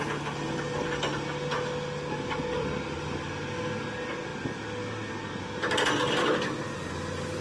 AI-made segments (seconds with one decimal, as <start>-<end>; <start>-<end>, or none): none